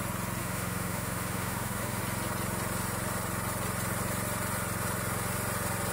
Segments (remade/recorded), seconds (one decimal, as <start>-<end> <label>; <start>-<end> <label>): 0.0-0.4 recorded; 0.4-2.0 remade; 2.0-5.9 recorded